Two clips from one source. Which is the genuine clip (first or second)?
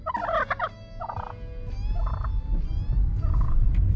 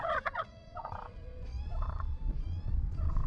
first